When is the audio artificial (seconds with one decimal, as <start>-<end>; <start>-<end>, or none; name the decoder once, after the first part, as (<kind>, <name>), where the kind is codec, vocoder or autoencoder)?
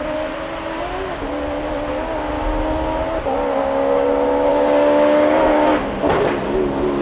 3.6-4.1 (codec, DAC); 4.5-5.7